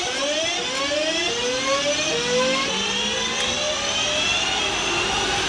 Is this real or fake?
real